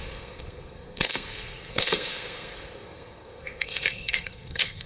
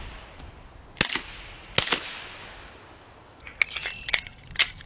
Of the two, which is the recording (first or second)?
second